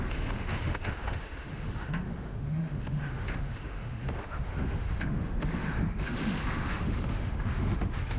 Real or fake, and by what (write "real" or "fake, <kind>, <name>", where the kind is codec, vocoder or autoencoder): fake, autoencoder, DAC-VAE